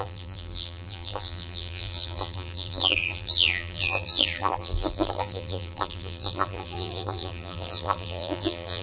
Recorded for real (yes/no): no